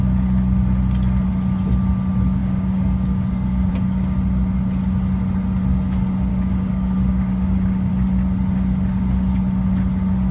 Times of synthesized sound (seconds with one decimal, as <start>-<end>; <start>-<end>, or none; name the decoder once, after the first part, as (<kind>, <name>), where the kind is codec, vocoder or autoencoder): 2.4-3.7 (codec, DAC); 6.3-7.9